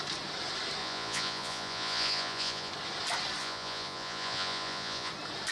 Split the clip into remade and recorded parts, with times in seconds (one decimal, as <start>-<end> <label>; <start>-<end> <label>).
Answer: 0.0-0.8 recorded; 0.8-2.7 remade; 2.7-3.4 recorded; 3.4-5.1 remade; 5.1-5.5 recorded